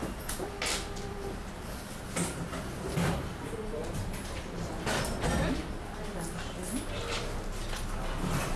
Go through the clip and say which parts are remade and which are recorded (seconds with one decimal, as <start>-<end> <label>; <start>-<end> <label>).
0.0-1.9 remade; 1.9-3.8 recorded; 3.8-4.7 remade; 4.7-8.6 recorded